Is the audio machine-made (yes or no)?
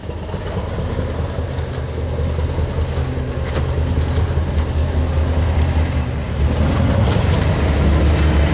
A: no